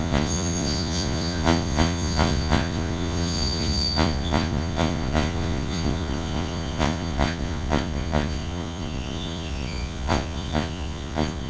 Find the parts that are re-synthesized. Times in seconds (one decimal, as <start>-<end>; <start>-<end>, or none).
0.0-11.5